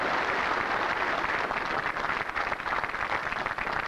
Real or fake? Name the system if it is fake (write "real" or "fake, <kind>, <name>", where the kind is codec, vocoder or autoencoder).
real